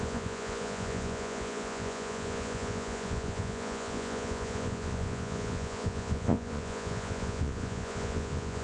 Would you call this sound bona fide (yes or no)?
no